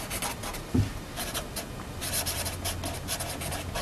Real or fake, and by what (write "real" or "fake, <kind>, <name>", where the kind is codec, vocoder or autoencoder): real